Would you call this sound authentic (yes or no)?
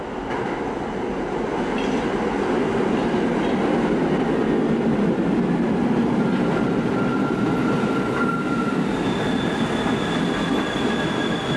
yes